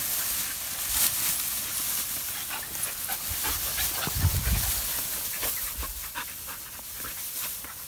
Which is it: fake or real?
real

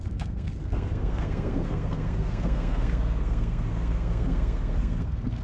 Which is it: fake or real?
fake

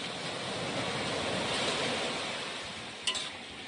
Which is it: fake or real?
real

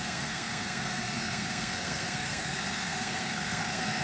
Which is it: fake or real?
fake